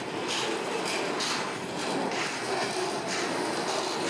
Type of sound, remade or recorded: recorded